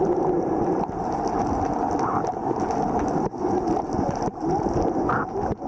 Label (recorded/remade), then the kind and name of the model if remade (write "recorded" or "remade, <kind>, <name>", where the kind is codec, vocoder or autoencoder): recorded